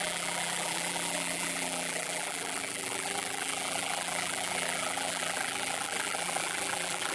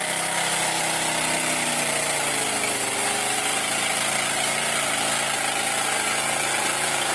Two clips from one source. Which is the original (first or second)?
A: second